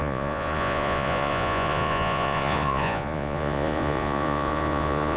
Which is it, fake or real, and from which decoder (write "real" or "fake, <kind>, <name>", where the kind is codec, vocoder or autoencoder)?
fake, vocoder, Vocos